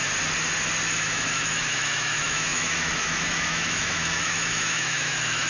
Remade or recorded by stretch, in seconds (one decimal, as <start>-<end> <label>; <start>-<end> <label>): 0.0-0.9 recorded; 0.9-5.5 remade